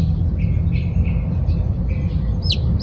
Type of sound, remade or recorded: recorded